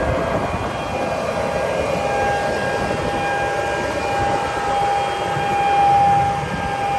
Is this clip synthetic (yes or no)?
no